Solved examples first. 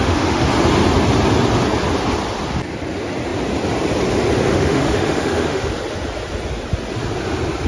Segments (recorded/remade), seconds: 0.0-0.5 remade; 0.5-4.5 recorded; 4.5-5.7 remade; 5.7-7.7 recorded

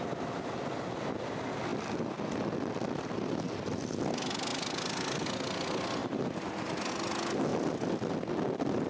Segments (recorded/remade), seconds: 0.0-8.9 recorded

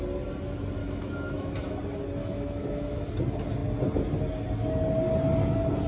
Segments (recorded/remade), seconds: 0.0-0.8 recorded; 0.8-1.8 remade; 1.8-2.2 recorded; 2.2-3.1 remade; 3.1-5.9 recorded

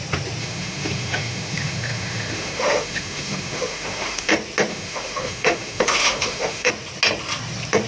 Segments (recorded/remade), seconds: 0.0-0.4 recorded; 0.4-4.3 remade; 4.3-4.7 recorded; 4.7-6.7 remade; 6.7-7.9 recorded